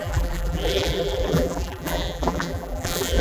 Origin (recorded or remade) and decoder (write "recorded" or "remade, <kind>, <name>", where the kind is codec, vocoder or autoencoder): remade, vocoder, BigVGAN v2